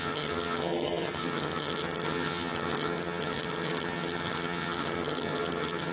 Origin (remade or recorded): remade